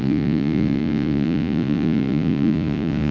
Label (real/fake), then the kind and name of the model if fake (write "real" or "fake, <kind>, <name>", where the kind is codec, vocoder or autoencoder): fake, vocoder, Vocos